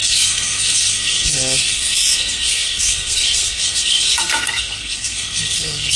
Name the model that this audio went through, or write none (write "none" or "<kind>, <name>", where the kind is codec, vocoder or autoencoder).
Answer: codec, SNAC